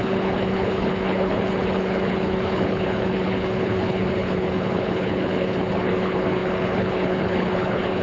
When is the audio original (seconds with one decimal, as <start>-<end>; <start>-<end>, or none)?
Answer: none